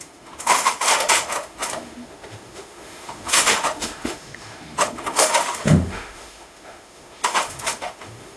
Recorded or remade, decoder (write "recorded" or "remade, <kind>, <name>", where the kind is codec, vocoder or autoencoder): remade, autoencoder, DAC-VAE